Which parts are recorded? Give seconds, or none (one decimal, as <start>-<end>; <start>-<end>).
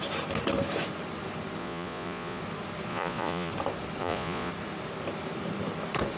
0.0-1.6; 2.4-2.9; 3.5-4.0; 4.5-6.2